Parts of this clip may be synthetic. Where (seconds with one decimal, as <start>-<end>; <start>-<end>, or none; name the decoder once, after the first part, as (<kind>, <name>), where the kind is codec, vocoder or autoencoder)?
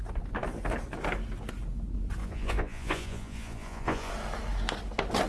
2.2-4.1 (vocoder, Vocos)